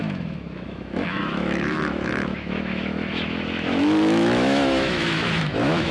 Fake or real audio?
fake